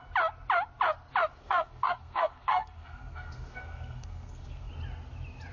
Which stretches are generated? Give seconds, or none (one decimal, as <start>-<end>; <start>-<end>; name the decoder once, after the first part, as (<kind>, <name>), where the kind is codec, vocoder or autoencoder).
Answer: 1.4-4.7 (codec, SNAC)